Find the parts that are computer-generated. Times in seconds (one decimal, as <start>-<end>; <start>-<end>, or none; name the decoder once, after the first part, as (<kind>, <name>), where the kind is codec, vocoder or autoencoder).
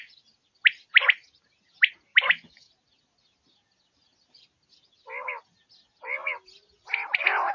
2.1-2.7 (autoencoder, DAC-VAE)